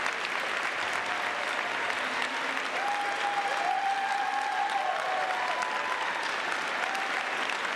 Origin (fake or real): real